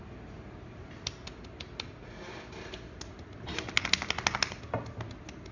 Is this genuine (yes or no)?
yes